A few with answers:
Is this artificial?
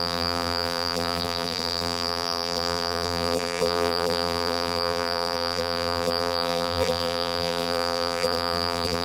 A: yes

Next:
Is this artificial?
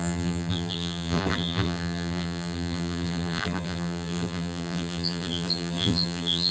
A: yes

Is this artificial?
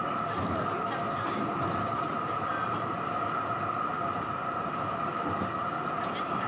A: yes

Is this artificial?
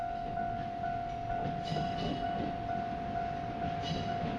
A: no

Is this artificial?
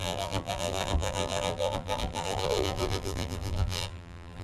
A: yes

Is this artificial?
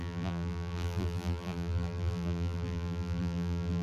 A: yes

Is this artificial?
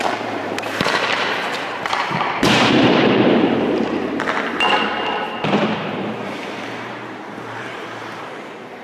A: yes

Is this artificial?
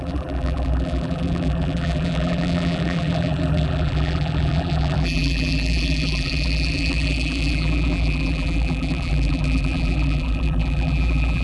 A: yes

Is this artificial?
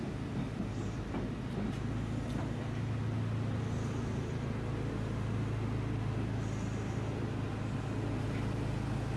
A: no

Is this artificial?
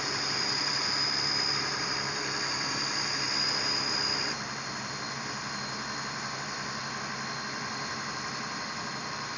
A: yes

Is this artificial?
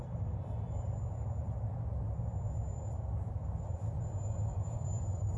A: yes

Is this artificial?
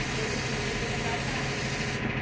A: no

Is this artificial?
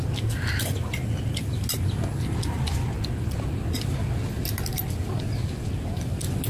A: no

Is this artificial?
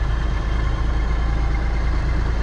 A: yes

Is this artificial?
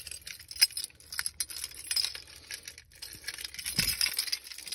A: no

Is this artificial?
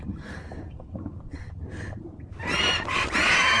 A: yes